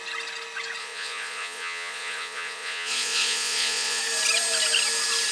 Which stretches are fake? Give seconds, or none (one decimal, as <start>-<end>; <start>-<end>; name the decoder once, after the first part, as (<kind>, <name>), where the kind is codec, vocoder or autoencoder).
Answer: 0.8-4.0 (vocoder, Vocos)